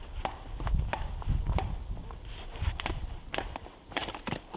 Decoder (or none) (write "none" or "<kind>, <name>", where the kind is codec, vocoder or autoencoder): none